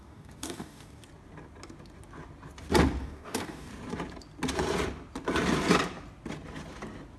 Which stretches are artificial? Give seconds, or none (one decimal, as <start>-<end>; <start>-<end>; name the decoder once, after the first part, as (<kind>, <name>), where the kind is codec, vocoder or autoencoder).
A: 0.0-1.0 (codec, DAC); 3.0-3.7